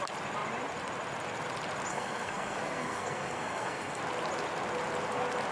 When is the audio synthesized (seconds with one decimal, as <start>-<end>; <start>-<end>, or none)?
1.9-4.0